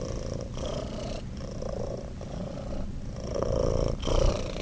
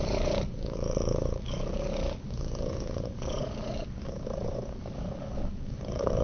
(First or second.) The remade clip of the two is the second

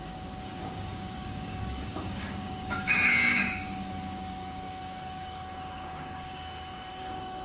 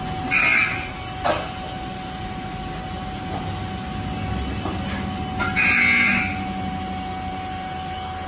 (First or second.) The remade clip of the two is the first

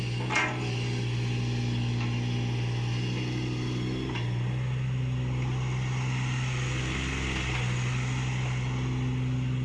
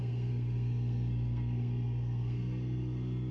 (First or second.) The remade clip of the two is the second